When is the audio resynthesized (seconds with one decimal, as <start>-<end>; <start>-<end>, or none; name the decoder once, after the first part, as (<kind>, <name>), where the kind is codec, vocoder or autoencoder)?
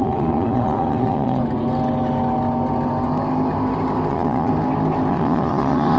0.0-1.4 (vocoder, Vocos); 4.1-4.5; 5.1-6.0